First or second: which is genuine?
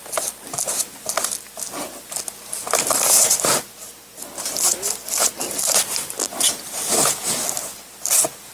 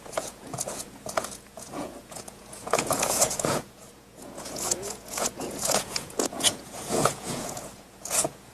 first